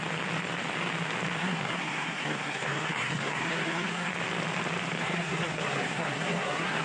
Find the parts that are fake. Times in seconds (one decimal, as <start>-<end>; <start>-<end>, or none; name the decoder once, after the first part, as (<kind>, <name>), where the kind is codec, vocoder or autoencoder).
1.4-4.1 (codec, SNAC); 5.0-6.8